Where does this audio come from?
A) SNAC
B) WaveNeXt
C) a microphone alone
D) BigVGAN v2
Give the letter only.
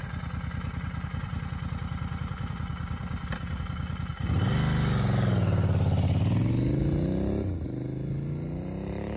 C